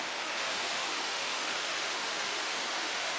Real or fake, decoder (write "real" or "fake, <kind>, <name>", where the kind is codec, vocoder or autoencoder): fake, autoencoder, DAC-VAE